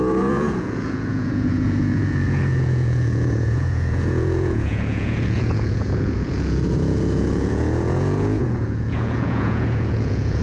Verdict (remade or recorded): remade